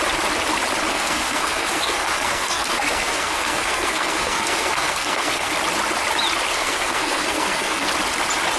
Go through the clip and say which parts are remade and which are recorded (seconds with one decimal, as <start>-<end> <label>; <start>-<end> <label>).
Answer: 0.0-0.9 recorded; 0.9-5.5 remade; 5.5-6.5 recorded; 6.5-7.9 remade; 7.9-8.6 recorded